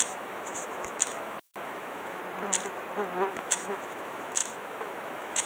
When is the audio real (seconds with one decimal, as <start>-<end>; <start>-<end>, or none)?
2.2-3.3